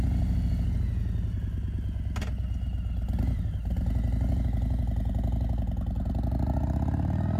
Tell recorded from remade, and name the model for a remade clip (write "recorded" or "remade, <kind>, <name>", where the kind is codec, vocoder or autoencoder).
recorded